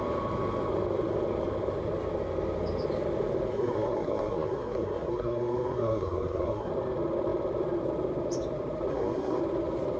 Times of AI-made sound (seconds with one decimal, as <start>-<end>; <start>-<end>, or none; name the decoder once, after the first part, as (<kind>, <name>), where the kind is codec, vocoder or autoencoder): 3.5-6.7 (codec, SNAC); 8.9-9.4